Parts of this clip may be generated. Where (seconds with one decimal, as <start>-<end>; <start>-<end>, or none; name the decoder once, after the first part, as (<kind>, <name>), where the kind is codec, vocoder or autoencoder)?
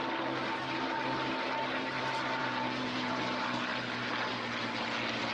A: 2.4-3.2 (vocoder, Vocos)